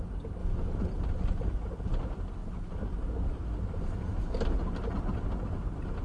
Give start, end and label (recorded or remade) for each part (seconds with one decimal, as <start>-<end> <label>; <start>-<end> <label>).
0.0-6.0 recorded